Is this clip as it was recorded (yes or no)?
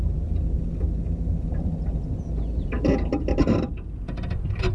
yes